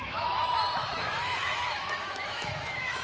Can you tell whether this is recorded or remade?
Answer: remade